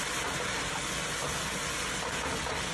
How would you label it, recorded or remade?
recorded